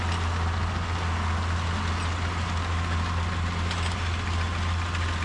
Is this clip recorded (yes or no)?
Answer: yes